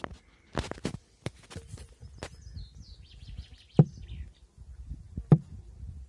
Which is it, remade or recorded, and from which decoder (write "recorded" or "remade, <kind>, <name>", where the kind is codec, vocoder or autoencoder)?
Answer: recorded